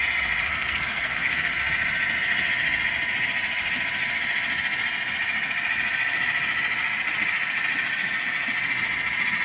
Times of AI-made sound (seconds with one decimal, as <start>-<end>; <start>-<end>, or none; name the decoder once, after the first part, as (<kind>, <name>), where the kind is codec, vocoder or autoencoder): 0.5-1.5 (codec, SNAC)